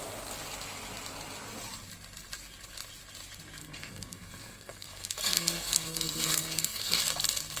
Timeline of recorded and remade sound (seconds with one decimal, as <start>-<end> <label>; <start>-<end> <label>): 0.0-3.6 recorded; 3.6-7.0 remade; 7.0-7.6 recorded